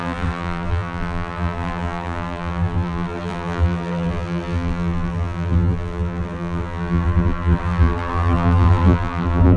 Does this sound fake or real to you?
fake